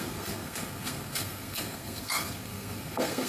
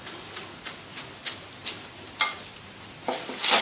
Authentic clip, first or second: second